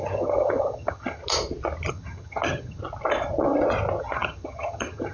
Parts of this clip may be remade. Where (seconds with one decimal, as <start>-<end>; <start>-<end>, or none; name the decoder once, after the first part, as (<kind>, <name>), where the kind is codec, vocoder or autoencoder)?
0.0-1.2 (vocoder, HiFi-GAN); 1.9-2.8; 4.0-5.1